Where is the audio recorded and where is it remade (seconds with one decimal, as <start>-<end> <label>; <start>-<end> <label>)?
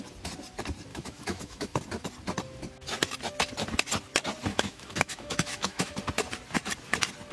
0.0-0.9 recorded; 0.9-1.8 remade; 1.8-4.5 recorded; 4.5-5.9 remade; 5.9-7.3 recorded